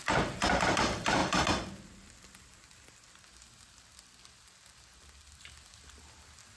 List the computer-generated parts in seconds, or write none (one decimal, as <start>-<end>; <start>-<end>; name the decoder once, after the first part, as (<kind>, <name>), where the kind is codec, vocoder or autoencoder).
none